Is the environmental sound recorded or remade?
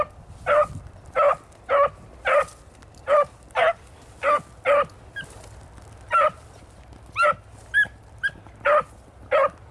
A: recorded